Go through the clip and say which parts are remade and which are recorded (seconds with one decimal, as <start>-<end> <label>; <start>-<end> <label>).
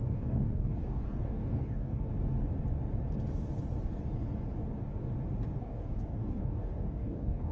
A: 0.0-2.1 remade; 2.1-5.6 recorded; 5.6-7.5 remade